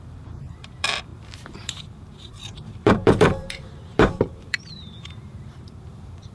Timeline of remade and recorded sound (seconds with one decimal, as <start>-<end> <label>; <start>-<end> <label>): 0.0-6.3 remade